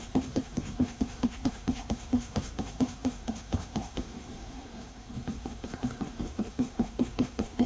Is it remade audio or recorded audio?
remade